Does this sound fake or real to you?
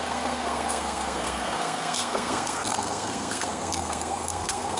fake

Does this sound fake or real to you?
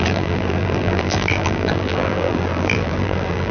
fake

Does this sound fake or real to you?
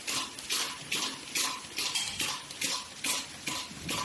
real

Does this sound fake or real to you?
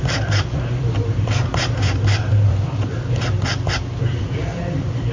fake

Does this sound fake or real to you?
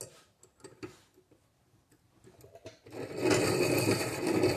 real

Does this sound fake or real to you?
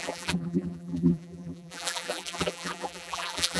fake